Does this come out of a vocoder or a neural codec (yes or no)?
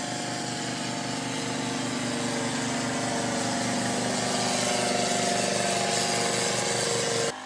no